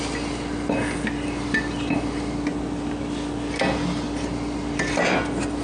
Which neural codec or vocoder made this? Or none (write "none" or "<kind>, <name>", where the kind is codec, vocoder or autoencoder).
none